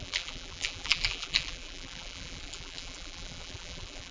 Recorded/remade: remade